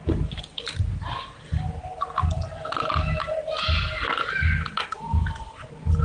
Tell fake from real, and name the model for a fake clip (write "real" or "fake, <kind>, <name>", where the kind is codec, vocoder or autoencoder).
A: real